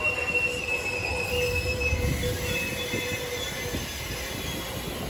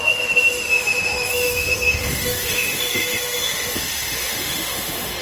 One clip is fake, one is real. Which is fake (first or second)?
second